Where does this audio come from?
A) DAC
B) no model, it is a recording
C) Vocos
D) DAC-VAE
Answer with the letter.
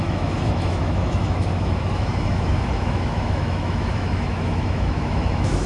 D